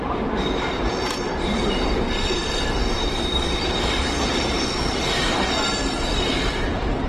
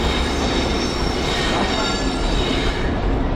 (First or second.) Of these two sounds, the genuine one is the second